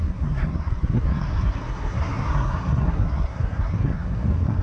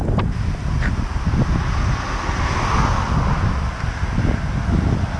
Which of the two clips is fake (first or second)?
first